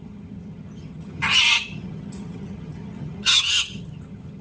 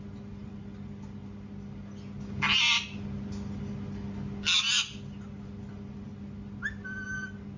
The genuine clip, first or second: second